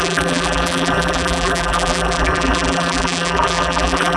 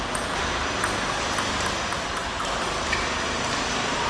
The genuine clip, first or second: second